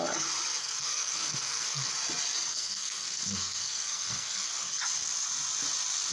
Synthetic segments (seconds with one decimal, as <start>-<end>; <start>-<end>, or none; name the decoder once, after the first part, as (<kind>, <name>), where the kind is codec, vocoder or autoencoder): 0.6-1.9 (codec, SNAC); 2.5-4.5